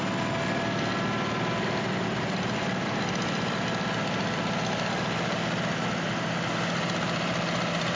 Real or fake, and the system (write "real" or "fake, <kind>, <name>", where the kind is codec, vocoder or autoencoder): real